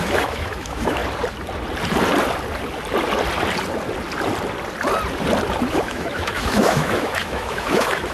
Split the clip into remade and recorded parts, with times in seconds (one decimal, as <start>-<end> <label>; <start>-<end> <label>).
0.0-1.0 remade; 1.0-5.7 recorded; 5.7-8.1 remade